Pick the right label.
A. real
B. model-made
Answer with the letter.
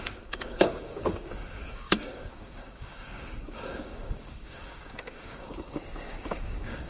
B